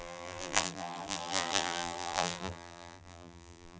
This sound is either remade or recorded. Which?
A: remade